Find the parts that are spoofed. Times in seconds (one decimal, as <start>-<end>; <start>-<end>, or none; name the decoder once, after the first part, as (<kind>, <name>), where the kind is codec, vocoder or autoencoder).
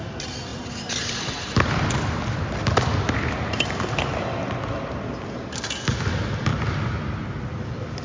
0.5-2.0 (vocoder, BigVGAN v2); 6.5-7.6